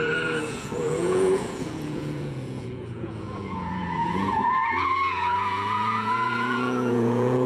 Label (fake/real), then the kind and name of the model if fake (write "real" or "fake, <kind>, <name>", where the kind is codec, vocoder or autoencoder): fake, vocoder, Vocos